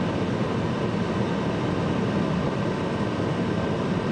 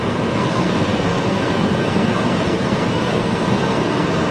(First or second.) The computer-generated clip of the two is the second